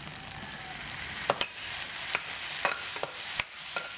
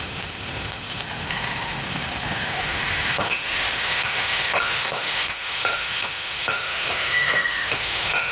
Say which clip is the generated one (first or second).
second